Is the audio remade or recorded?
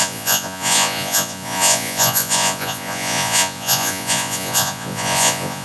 remade